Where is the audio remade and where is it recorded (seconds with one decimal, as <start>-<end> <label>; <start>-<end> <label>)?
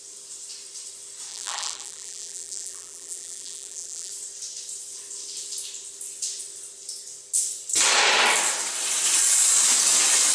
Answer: 0.0-1.3 recorded; 1.3-4.1 remade; 4.1-10.3 recorded